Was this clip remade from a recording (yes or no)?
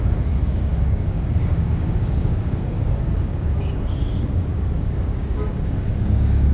yes